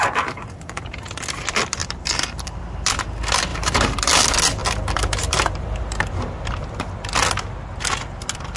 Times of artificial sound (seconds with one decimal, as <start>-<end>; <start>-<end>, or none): 1.8-2.6; 3.5-4.1; 4.6-6.4

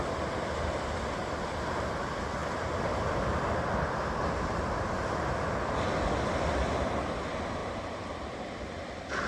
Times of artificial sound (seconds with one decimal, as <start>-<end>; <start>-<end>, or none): none

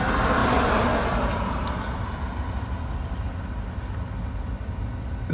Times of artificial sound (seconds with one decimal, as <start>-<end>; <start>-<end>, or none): none